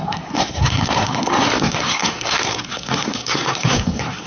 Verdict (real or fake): fake